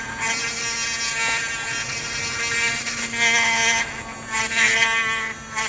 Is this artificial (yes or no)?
no